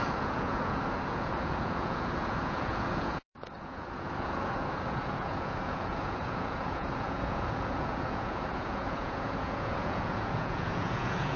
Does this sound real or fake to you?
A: fake